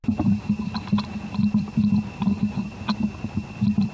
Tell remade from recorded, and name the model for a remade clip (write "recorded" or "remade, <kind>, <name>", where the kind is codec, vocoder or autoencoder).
recorded